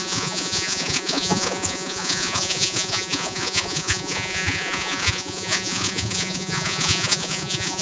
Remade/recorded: remade